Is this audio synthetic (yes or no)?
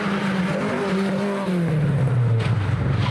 no